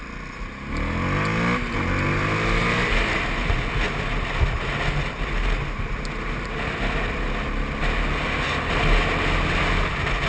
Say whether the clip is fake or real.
real